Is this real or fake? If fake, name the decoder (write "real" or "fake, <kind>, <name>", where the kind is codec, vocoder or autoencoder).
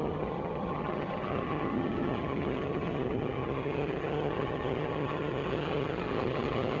fake, vocoder, HiFi-GAN